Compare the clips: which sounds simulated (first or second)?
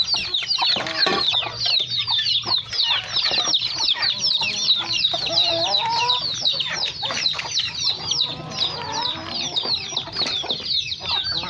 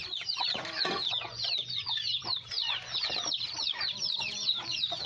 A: second